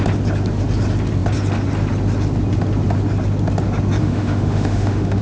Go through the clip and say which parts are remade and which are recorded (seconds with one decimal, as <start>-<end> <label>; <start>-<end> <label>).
0.0-4.0 recorded; 4.0-5.2 remade